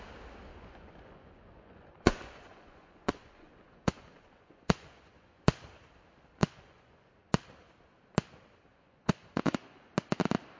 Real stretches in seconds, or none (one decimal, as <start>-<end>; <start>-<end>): 0.0-0.5; 5.4-6.4; 7.1-8.7; 9.9-10.6